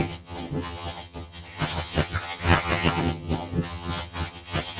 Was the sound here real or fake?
fake